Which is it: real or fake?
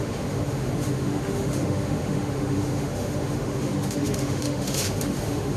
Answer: fake